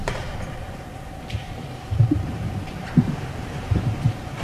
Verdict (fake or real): fake